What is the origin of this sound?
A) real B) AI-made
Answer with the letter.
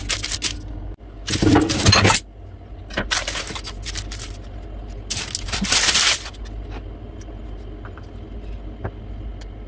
A